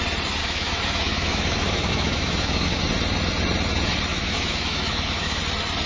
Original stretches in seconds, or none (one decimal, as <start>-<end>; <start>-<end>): 0.0-0.4; 2.8-4.1; 5.4-5.9